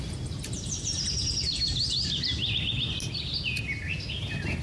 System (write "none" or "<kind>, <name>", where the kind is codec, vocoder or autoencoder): none